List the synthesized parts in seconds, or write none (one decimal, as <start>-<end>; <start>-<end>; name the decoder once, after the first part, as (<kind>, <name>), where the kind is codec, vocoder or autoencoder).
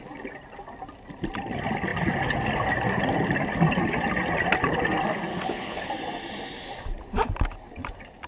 5.3-5.9 (codec, HILCodec)